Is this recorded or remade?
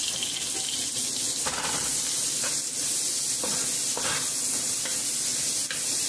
recorded